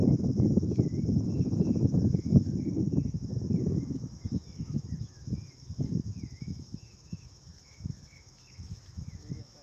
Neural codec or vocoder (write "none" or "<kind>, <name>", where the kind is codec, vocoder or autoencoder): autoencoder, DAC-VAE